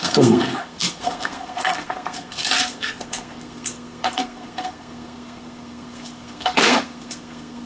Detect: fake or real fake